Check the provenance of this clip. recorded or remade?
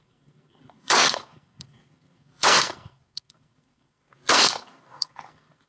remade